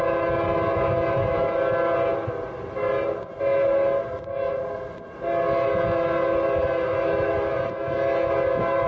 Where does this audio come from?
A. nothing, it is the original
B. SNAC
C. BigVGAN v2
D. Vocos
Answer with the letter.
A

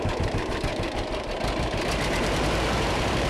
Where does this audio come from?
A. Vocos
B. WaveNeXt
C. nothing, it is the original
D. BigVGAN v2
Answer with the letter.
D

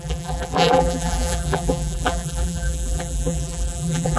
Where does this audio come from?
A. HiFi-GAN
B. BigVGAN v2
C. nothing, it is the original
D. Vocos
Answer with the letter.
B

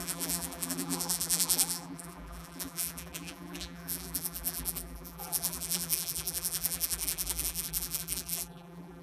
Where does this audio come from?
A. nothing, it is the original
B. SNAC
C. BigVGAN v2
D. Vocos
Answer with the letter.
C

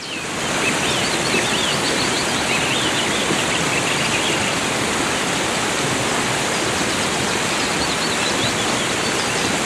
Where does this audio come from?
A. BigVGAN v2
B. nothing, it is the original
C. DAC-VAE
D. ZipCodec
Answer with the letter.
B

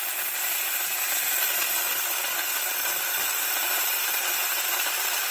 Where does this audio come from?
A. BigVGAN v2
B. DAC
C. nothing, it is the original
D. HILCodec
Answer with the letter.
C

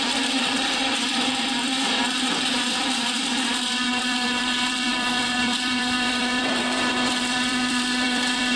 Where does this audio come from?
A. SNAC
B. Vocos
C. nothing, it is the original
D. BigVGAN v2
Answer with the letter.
D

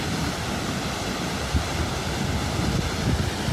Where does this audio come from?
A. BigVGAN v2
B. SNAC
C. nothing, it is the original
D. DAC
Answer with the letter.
C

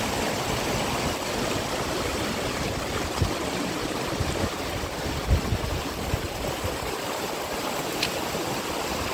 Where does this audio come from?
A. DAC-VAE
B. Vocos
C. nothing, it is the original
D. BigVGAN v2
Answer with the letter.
C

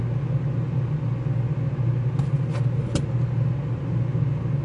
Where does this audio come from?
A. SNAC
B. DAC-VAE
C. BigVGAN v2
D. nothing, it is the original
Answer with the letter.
D